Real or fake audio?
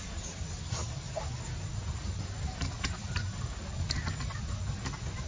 real